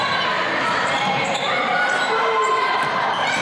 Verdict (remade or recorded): remade